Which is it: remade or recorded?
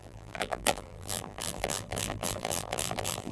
remade